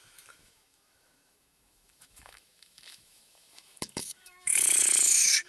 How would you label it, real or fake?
fake